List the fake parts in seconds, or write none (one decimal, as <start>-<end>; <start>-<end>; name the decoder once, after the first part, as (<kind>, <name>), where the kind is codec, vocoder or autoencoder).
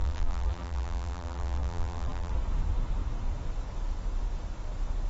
0.0-2.3 (vocoder, BigVGAN v2)